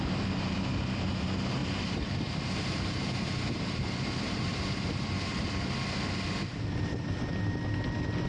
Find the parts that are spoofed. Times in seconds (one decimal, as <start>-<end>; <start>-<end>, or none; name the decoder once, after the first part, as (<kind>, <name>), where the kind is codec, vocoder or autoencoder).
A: 1.6-5.5 (vocoder, BigVGAN v2)